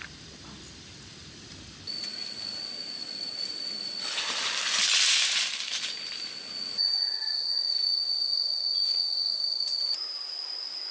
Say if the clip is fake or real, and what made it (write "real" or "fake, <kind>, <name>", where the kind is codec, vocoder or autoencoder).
real